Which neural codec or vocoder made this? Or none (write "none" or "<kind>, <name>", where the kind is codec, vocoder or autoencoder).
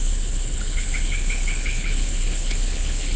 codec, HILCodec